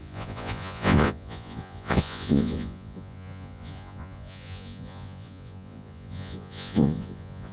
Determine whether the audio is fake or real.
fake